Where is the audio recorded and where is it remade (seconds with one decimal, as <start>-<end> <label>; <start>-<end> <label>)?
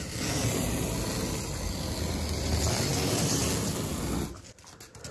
0.0-5.1 recorded